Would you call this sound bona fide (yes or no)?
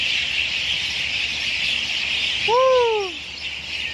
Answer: yes